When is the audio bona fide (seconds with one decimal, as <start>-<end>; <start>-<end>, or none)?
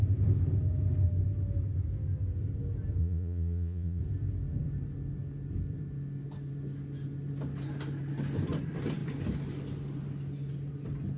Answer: 0.0-3.0; 4.0-11.2